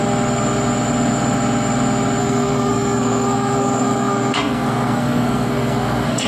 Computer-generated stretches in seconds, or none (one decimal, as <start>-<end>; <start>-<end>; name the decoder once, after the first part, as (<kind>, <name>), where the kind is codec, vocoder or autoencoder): 2.2-6.3 (codec, SNAC)